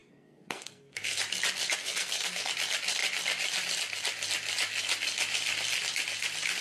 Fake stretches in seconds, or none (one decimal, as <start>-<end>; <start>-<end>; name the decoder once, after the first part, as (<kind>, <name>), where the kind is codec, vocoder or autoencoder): 0.0-1.2 (codec, SNAC); 1.8-2.5